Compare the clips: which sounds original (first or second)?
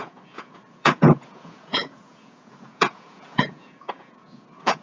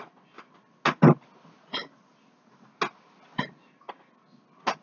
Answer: second